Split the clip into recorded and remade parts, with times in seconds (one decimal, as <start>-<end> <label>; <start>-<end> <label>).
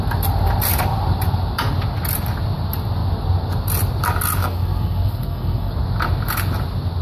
0.0-4.4 recorded; 4.4-5.7 remade; 5.7-7.0 recorded